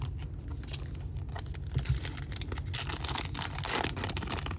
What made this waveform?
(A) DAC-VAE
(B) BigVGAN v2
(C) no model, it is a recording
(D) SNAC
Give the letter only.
C